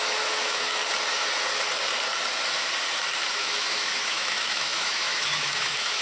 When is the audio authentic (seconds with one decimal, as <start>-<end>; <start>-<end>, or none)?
0.8-3.3